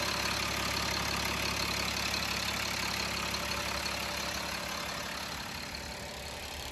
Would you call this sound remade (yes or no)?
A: no